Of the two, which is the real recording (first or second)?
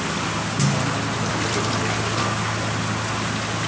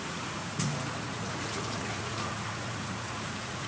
first